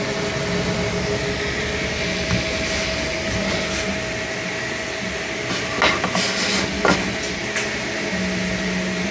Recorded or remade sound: recorded